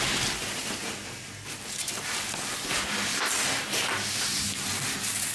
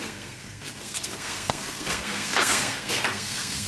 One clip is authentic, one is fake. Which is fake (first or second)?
second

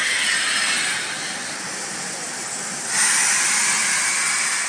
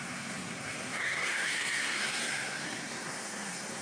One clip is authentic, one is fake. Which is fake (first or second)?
second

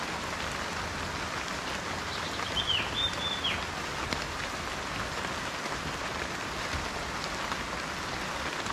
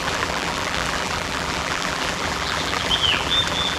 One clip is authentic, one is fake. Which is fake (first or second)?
second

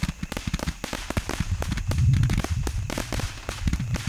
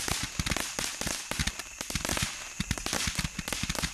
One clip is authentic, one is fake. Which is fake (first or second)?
first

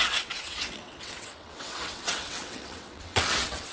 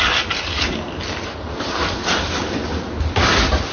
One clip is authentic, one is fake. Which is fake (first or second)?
first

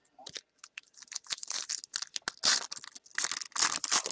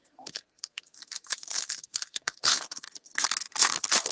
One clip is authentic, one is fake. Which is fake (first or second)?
second